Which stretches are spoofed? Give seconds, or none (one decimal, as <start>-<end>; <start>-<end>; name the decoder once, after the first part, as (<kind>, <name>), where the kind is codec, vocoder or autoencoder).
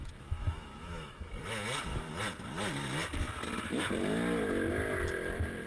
0.0-1.3 (autoencoder, DAC-VAE)